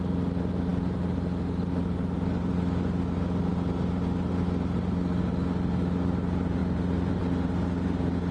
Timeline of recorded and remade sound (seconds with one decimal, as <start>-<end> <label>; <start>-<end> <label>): 0.0-8.3 recorded